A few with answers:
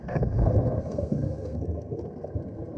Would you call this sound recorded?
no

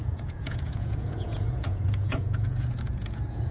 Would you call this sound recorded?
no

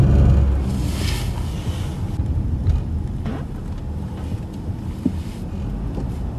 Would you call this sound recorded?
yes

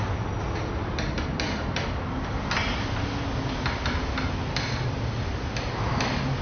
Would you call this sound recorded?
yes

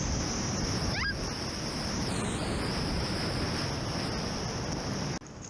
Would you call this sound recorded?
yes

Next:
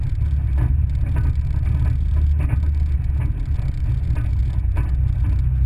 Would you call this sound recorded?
yes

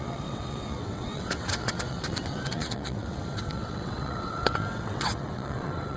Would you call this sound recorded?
no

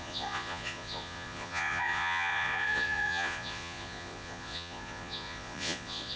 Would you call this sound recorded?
no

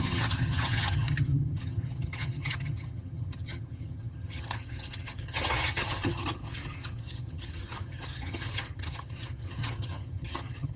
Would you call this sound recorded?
no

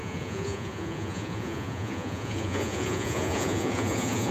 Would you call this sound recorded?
no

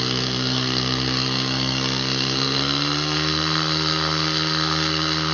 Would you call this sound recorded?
no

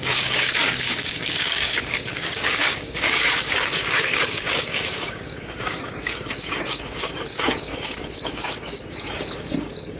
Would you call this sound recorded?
no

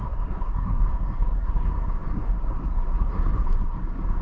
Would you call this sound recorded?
no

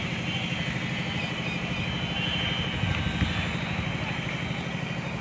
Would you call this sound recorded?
yes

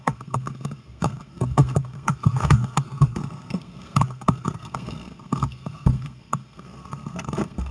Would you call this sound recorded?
no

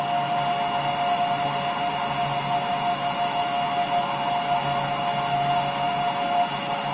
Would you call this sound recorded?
yes